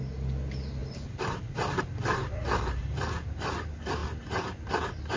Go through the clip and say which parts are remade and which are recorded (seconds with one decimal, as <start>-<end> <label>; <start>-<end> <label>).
0.0-0.8 recorded; 0.8-3.6 remade; 3.6-5.2 recorded